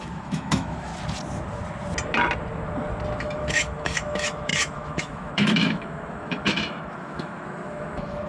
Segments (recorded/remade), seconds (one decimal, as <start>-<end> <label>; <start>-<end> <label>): 0.0-0.9 remade; 0.9-3.2 recorded; 3.2-8.3 remade